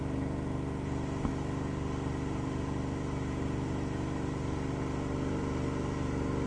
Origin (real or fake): real